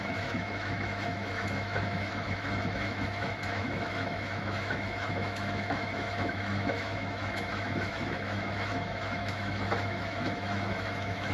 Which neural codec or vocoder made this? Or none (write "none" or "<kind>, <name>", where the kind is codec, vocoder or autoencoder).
autoencoder, DAC-VAE